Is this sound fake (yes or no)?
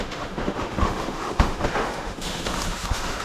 yes